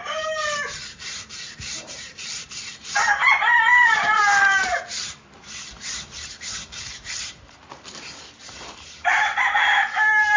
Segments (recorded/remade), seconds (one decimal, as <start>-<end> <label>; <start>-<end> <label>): 0.0-10.4 remade